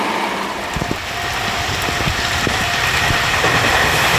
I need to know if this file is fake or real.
fake